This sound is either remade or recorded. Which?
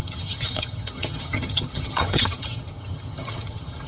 remade